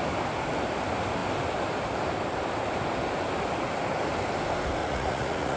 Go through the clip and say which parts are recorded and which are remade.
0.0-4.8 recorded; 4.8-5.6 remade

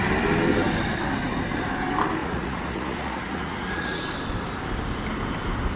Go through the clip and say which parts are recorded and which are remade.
0.0-2.2 recorded; 2.2-4.0 remade; 4.0-5.8 recorded

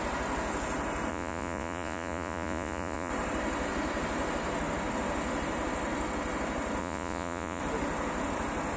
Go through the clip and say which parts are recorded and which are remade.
0.0-1.1 recorded; 1.1-3.1 remade; 3.1-6.8 recorded; 6.8-7.6 remade; 7.6-8.8 recorded

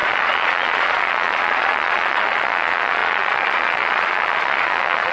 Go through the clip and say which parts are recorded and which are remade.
0.0-5.1 remade

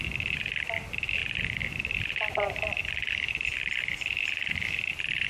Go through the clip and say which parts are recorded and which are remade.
0.0-5.3 recorded

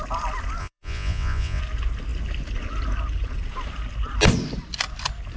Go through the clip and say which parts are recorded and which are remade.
0.0-0.6 recorded; 0.6-1.6 remade; 1.6-5.4 recorded